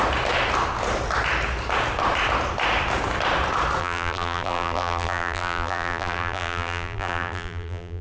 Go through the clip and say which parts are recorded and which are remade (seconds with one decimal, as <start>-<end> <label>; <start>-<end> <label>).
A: 0.0-3.8 recorded; 3.8-8.0 remade